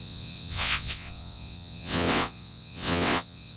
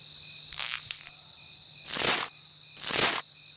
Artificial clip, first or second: first